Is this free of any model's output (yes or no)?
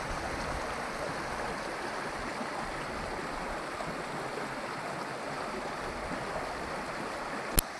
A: yes